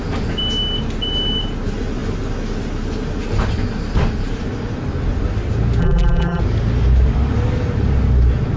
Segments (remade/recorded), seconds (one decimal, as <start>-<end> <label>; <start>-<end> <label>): 0.0-5.8 recorded; 5.8-6.4 remade; 6.4-8.6 recorded